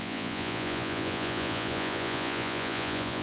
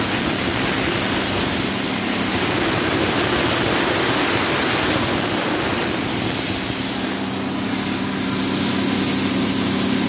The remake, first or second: first